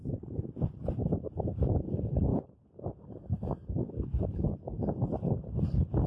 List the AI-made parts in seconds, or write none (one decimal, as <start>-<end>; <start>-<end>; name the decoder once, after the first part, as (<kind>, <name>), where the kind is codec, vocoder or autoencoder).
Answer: none